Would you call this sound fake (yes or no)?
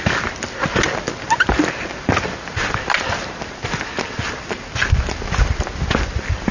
no